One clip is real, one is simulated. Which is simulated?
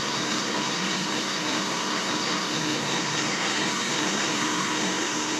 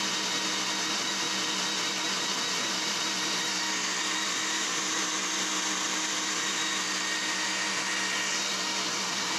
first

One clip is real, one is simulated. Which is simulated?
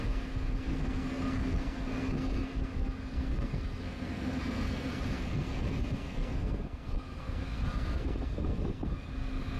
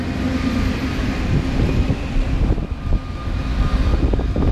first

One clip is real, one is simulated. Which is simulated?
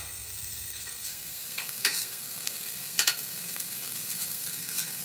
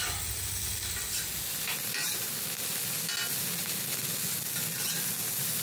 first